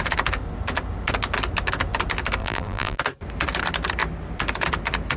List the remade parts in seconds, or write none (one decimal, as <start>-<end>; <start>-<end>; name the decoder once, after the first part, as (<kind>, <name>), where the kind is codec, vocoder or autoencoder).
2.4-3.0 (vocoder, BigVGAN v2)